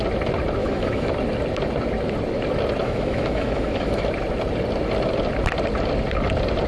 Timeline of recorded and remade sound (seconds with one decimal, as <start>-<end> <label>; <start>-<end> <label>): 0.0-0.6 recorded; 0.6-1.1 remade; 1.1-2.8 recorded; 2.8-4.1 remade; 4.1-6.7 recorded